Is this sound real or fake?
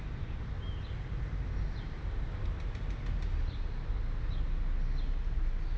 real